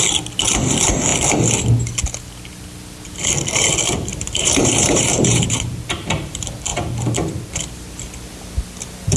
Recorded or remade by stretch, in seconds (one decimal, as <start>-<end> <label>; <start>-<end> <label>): 0.0-4.1 recorded; 4.1-5.9 remade; 5.9-9.2 recorded